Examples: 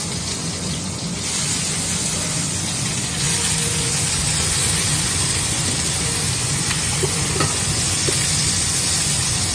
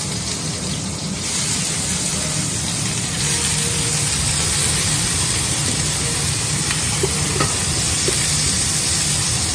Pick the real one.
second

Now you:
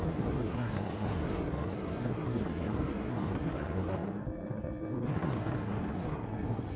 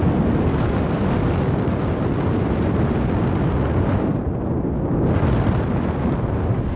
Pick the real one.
second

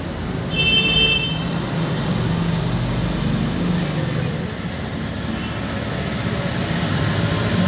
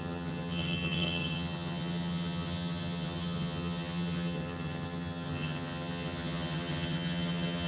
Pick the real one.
first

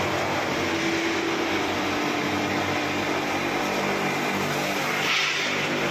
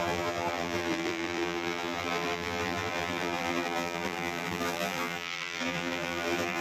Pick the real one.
first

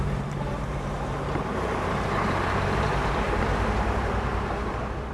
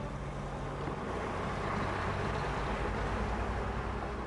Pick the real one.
second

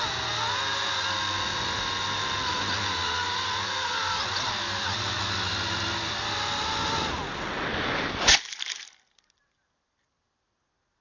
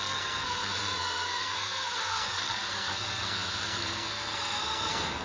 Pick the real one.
first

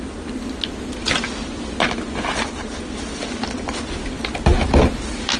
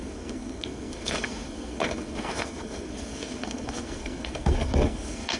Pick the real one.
first